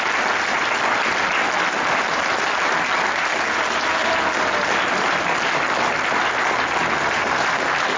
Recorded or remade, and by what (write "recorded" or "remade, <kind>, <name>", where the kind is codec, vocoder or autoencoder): recorded